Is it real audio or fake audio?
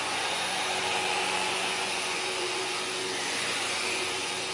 fake